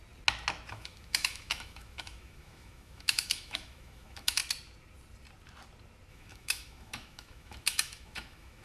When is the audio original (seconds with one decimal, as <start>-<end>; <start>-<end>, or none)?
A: 0.0-0.7; 4.4-6.1